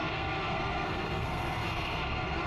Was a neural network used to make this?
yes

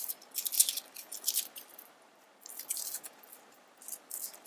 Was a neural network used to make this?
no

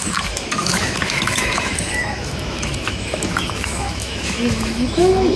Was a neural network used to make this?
yes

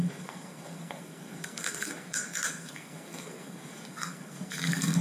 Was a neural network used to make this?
yes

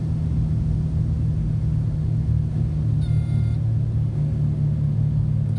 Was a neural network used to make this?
no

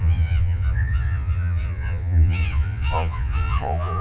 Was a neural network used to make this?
yes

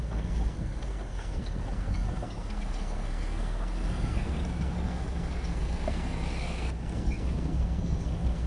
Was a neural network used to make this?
yes